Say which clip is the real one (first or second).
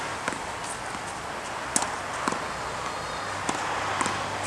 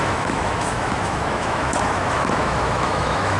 first